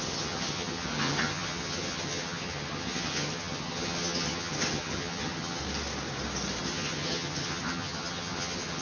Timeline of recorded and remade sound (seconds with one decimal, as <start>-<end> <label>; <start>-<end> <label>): 0.0-5.6 remade; 5.6-6.6 recorded; 6.6-8.8 remade